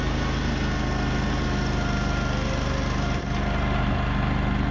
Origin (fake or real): real